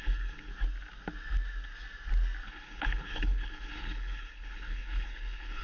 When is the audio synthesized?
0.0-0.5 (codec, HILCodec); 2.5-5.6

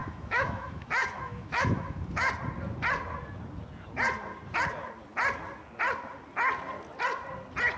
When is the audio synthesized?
0.0-2.3 (autoencoder, DAC-VAE)

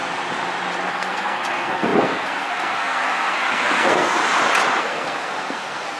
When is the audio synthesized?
0.9-4.2 (codec, SNAC); 4.8-6.0

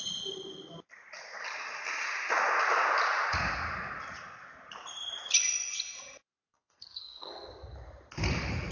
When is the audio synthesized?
6.5-7.5 (codec, SNAC)

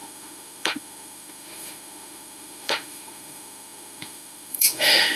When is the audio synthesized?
0.0-5.2 (autoencoder, DAC-VAE)